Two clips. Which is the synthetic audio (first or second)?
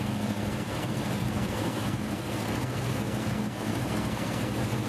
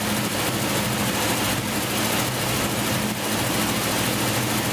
first